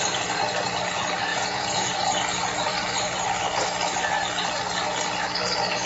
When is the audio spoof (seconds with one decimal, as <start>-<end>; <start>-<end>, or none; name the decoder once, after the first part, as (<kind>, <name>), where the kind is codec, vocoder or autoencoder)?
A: 1.3-1.9 (vocoder, Vocos)